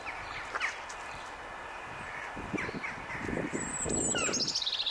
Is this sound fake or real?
real